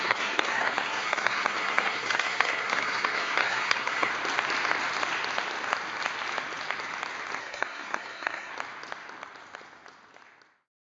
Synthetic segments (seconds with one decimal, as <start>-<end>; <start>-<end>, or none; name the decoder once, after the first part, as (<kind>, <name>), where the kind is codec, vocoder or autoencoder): 0.0-4.1 (codec, SNAC); 7.4-8.5